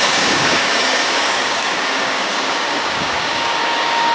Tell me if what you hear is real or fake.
fake